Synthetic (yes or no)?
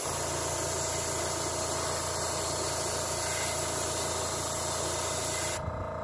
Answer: no